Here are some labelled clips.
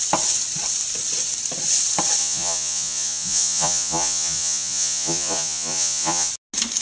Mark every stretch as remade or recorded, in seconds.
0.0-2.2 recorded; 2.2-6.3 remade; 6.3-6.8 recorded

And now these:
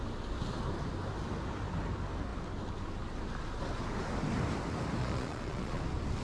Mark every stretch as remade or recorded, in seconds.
0.0-5.0 recorded; 5.0-5.8 remade; 5.8-6.2 recorded

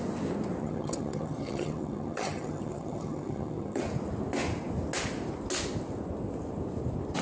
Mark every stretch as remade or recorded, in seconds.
0.0-0.6 recorded; 0.6-3.8 remade; 3.8-7.2 recorded

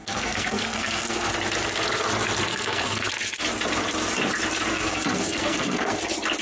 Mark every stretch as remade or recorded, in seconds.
0.0-1.3 remade; 1.3-2.5 recorded; 2.5-3.1 remade; 3.1-4.7 recorded; 4.7-6.0 remade; 6.0-6.4 recorded

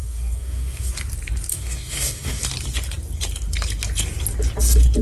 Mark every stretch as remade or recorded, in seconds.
0.0-0.9 remade; 0.9-1.5 recorded; 1.5-2.4 remade; 2.4-5.0 recorded